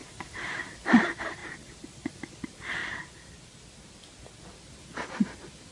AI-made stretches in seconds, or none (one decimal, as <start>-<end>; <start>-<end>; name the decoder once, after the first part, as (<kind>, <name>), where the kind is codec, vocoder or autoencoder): 0.0-1.4 (vocoder, BigVGAN v2); 2.1-5.7